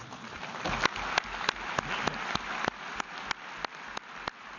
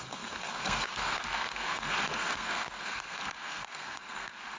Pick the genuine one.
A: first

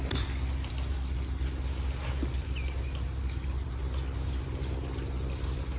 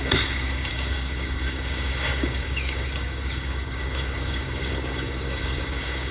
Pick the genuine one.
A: first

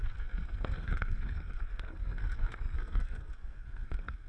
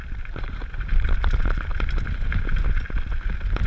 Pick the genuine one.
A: second